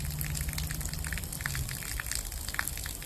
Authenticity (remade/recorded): recorded